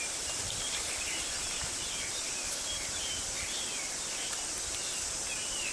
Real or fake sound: fake